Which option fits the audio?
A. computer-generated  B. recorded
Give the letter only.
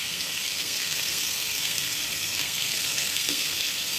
A